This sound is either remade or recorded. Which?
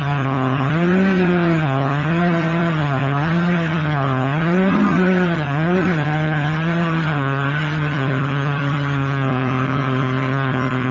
remade